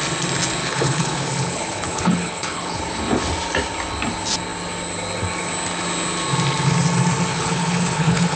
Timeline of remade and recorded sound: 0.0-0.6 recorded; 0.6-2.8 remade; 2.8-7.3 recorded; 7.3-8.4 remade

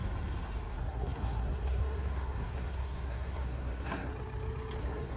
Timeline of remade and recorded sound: 0.0-0.7 recorded; 0.7-4.1 remade; 4.1-4.8 recorded; 4.8-5.2 remade

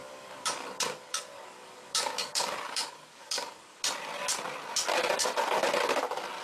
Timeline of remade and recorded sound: 0.0-3.8 remade; 3.8-6.4 recorded

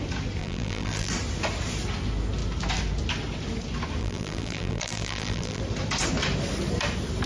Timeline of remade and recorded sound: 0.0-0.4 recorded; 0.4-1.1 remade; 1.1-4.0 recorded; 4.0-5.6 remade; 5.6-7.3 recorded

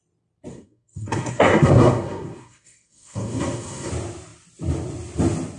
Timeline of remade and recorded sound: 0.0-0.5 recorded; 0.5-3.9 remade; 3.9-5.6 recorded

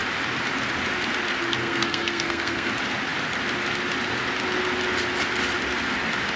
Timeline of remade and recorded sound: 0.0-1.6 recorded; 1.6-2.7 remade; 2.7-6.4 recorded